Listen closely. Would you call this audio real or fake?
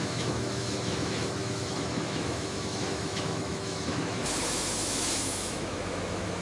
fake